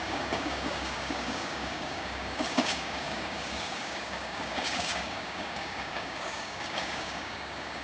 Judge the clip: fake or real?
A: fake